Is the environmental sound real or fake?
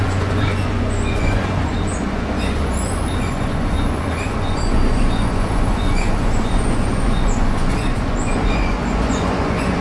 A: fake